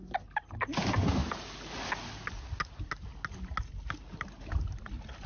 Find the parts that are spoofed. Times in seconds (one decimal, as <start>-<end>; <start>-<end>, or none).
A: none